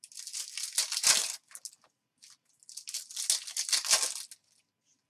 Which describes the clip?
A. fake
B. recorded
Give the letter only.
B